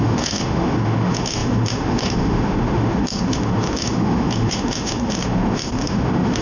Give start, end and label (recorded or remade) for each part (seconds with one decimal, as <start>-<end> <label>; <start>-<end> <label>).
0.0-6.4 remade